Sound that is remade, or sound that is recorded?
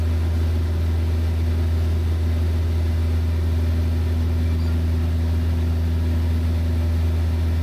recorded